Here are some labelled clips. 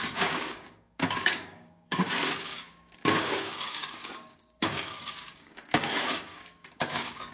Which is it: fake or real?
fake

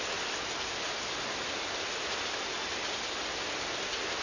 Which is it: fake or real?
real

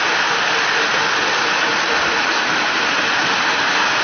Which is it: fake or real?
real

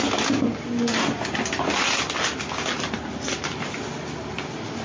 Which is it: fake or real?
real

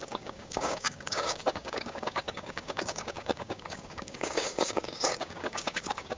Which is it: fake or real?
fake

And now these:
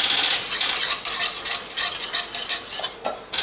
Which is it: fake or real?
real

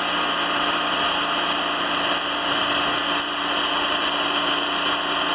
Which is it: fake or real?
real